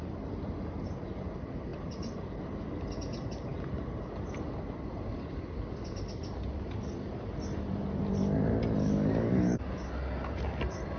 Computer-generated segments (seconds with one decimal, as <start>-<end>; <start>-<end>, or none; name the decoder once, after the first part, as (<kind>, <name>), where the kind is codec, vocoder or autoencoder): 8.8-9.6 (codec, DAC)